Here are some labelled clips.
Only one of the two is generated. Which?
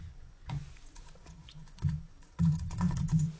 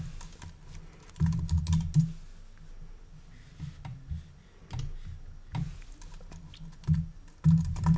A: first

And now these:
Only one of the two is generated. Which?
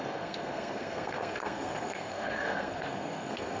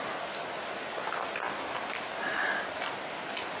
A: first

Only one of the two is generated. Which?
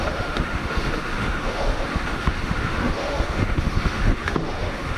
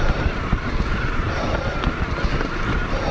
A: first